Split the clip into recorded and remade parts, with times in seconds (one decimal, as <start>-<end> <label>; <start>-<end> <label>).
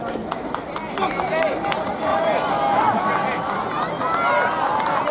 0.0-5.1 recorded